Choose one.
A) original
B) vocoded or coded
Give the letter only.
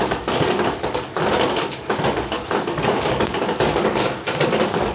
B